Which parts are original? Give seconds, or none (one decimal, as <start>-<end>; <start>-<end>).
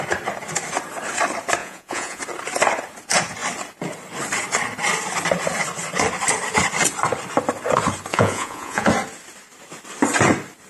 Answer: 0.0-1.6; 2.2-8.1; 8.9-10.7